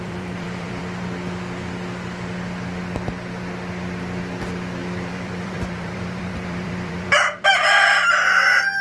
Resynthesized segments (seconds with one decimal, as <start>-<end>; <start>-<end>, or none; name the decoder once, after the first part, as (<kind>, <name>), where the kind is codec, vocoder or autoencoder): 0.0-0.8 (vocoder, BigVGAN v2); 4.8-7.5